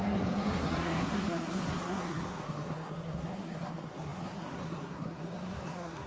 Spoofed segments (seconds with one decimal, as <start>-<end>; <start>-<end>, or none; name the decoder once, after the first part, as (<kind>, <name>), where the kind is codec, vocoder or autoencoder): 0.0-6.1 (codec, SNAC)